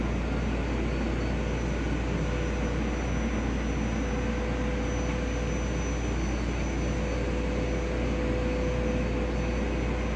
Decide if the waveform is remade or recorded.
recorded